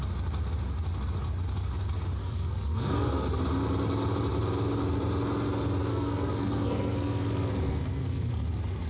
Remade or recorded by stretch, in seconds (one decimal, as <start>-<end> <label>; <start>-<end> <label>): 0.0-2.2 recorded; 2.2-3.4 remade; 3.4-5.9 recorded; 5.9-8.3 remade; 8.3-8.9 recorded